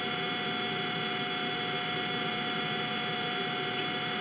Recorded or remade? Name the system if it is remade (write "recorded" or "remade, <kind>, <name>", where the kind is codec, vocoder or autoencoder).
recorded